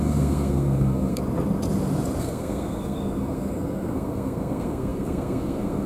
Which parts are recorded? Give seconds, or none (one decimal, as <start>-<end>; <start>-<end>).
1.2-2.2